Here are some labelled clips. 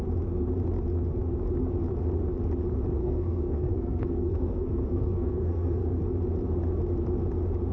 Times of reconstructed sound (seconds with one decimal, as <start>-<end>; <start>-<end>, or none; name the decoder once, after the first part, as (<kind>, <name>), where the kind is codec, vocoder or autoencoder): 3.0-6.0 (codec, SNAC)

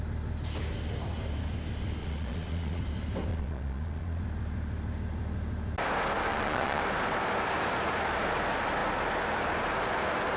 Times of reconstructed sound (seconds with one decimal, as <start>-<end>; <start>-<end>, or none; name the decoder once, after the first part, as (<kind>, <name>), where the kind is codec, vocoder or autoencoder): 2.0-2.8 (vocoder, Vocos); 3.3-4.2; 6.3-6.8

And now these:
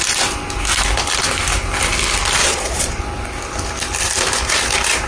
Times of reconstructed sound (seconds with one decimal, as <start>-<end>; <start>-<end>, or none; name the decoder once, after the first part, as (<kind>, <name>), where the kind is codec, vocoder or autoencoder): 2.4-3.0 (vocoder, Vocos)